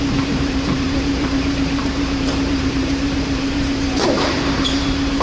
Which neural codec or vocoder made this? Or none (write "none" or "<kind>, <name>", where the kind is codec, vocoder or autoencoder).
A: vocoder, BigVGAN v2